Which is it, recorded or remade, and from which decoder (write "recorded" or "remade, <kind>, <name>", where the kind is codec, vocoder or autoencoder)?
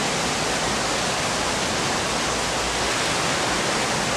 recorded